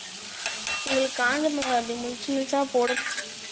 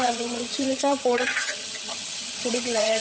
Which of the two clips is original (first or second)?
first